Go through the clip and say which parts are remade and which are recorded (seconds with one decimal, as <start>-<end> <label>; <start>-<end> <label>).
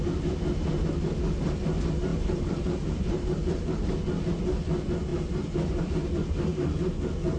0.0-2.1 recorded; 2.1-3.9 remade; 3.9-6.5 recorded; 6.5-7.4 remade